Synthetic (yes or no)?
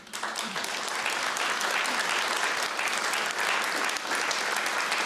no